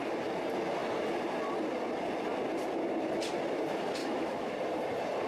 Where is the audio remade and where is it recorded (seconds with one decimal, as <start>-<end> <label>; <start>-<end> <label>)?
0.0-4.0 recorded; 4.0-4.5 remade; 4.5-5.3 recorded